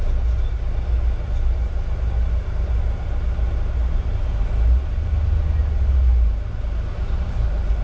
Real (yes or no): yes